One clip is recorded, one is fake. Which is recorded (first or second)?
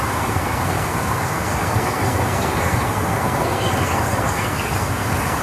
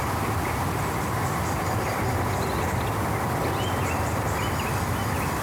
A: second